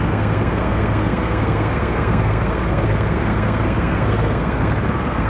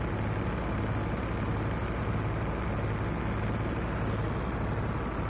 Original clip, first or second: second